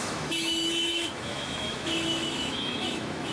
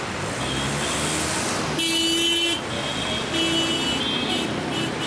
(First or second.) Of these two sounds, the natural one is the second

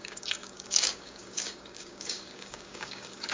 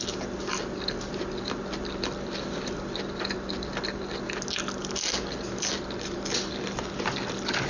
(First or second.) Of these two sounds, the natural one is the second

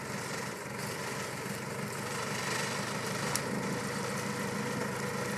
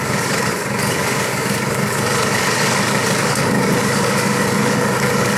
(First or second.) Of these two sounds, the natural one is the first